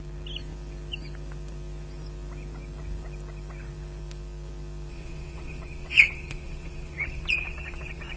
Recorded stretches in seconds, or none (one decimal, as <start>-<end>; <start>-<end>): 0.0-4.9